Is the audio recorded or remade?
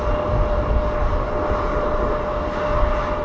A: recorded